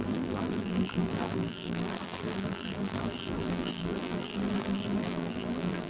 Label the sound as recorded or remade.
remade